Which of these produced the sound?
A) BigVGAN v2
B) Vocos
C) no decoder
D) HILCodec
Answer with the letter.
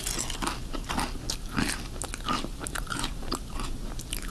C